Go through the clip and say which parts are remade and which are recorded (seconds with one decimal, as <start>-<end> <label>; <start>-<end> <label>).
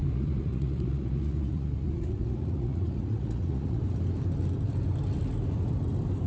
0.0-3.8 remade; 3.8-6.3 recorded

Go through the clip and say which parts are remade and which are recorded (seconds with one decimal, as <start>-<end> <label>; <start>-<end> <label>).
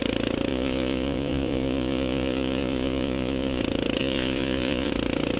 0.0-0.5 recorded; 0.5-3.6 remade; 3.6-4.0 recorded; 4.0-4.9 remade; 4.9-5.4 recorded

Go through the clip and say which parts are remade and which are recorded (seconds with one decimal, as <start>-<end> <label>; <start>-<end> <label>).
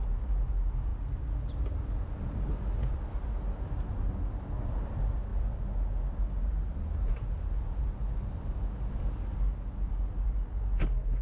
0.0-11.2 recorded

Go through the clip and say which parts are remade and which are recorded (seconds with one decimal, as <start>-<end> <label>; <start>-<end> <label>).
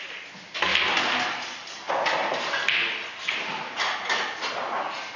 0.0-5.2 recorded